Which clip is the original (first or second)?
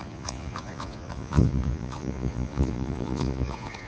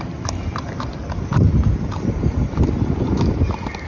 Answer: second